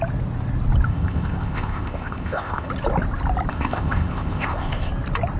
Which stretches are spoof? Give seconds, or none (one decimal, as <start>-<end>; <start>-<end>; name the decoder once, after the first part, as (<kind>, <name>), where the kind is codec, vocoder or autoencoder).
0.9-2.7 (codec, ZipCodec); 3.5-4.9